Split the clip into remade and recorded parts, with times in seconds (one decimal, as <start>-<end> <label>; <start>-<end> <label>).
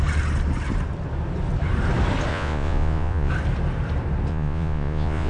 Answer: 0.0-2.3 recorded; 2.3-3.3 remade; 3.3-4.3 recorded; 4.3-5.3 remade